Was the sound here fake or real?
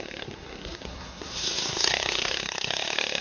fake